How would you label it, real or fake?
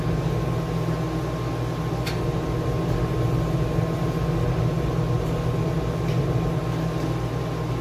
real